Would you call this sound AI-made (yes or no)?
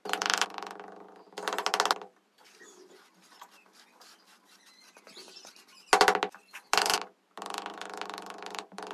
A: no